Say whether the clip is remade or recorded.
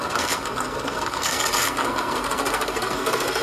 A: remade